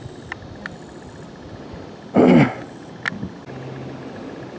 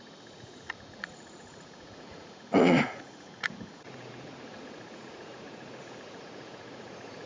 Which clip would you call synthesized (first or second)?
second